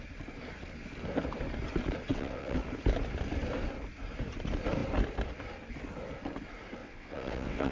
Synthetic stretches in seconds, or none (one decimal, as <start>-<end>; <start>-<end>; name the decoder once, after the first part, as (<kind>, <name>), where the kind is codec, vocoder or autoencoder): 2.1-2.6 (vocoder, WaveNeXt); 6.8-7.7